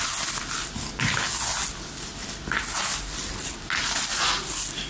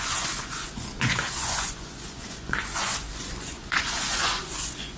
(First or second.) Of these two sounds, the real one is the first